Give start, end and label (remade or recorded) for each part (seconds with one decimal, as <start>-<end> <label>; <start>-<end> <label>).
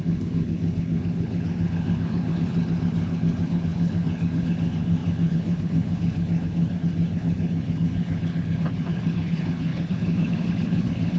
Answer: 0.0-11.2 remade